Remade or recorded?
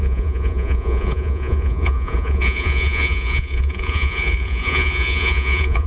remade